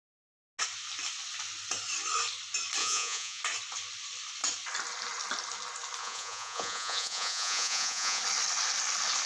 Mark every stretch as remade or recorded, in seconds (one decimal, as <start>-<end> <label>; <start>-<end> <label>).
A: 0.0-2.8 recorded; 2.8-3.4 remade; 3.4-6.0 recorded; 6.0-8.2 remade; 8.2-9.3 recorded